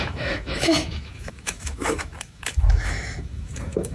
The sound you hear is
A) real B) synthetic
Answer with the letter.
B